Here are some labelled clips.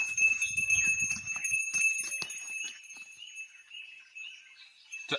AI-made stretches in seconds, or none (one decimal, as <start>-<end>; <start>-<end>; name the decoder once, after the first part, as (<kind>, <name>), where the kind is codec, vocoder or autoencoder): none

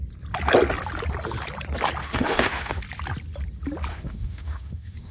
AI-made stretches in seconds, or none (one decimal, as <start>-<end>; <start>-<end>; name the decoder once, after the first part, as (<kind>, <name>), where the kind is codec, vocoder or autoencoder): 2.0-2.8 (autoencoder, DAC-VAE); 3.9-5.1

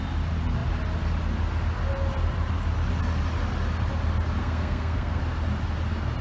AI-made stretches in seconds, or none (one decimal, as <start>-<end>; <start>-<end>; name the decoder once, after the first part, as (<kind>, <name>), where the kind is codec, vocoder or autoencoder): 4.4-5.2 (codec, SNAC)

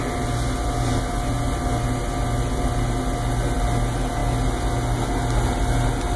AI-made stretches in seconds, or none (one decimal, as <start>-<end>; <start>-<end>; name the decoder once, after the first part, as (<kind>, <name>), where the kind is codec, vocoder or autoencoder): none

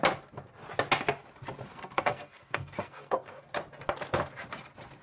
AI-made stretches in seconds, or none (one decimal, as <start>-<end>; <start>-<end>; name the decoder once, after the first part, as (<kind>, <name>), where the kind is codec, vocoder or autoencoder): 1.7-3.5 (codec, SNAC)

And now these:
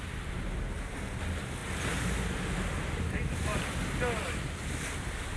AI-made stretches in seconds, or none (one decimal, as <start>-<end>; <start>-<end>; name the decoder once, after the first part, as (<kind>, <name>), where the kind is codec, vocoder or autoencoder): none